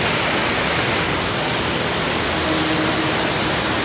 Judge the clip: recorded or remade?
recorded